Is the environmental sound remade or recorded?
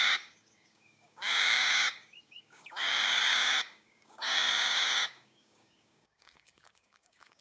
remade